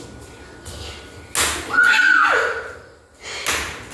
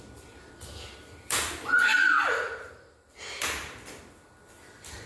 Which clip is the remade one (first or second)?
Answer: second